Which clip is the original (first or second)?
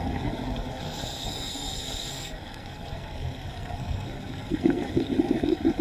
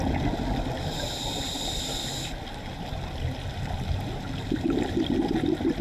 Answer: second